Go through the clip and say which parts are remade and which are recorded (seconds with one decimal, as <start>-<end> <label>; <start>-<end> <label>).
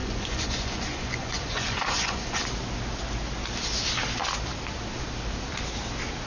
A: 0.0-2.4 remade; 2.4-6.3 recorded